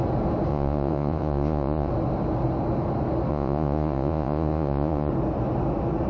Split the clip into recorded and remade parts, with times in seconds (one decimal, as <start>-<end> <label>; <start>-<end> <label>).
0.0-0.5 recorded; 0.5-1.9 remade; 1.9-3.3 recorded; 3.3-5.1 remade; 5.1-6.1 recorded